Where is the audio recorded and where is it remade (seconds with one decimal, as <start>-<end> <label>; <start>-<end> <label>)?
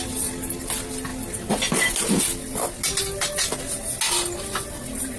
0.0-5.2 recorded